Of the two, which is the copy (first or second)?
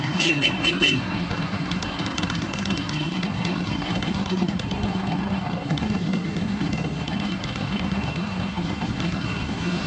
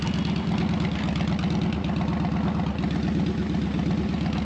first